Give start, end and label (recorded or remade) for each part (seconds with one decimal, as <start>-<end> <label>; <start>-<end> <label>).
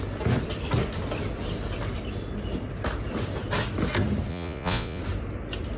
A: 0.0-4.3 recorded; 4.3-5.0 remade; 5.0-5.8 recorded